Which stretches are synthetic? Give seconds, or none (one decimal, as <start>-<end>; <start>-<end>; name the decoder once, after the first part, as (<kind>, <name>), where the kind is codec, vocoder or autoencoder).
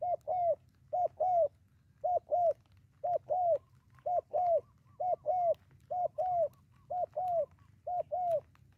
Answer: none